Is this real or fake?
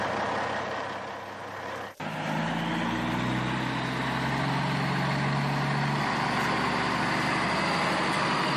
real